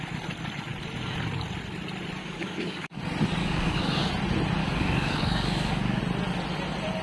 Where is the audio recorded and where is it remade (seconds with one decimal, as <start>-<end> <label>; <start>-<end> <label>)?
0.0-2.2 recorded; 2.2-3.0 remade; 3.0-3.4 recorded; 3.4-4.1 remade; 4.1-4.6 recorded; 4.6-6.0 remade; 6.0-7.0 recorded